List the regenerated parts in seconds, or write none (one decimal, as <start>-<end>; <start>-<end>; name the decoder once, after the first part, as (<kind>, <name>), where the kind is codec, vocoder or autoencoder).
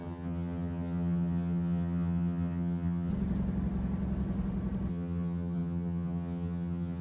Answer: 0.0-3.1 (vocoder, HiFi-GAN); 4.9-7.0